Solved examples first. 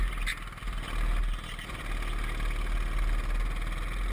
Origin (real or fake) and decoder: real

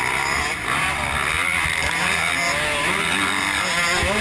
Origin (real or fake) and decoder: real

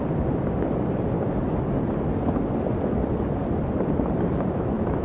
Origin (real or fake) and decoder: real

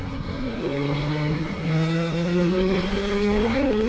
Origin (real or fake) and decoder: fake, codec, SNAC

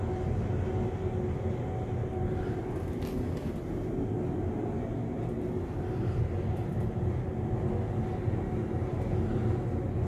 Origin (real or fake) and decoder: real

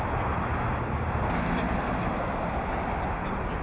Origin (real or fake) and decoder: real